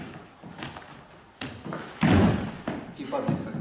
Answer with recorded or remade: recorded